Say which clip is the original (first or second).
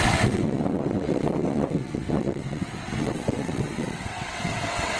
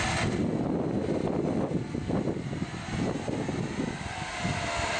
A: second